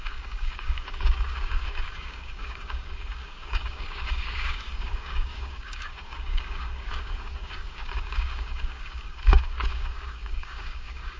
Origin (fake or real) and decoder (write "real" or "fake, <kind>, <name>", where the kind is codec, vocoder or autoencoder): fake, codec, DAC